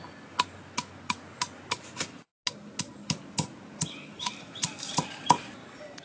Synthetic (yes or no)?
no